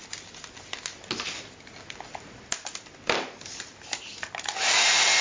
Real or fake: real